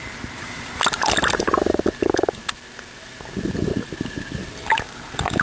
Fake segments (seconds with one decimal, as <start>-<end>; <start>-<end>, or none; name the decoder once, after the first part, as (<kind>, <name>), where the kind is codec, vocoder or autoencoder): none